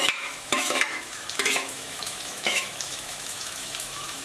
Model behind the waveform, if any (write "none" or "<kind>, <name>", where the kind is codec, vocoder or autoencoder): autoencoder, DAC-VAE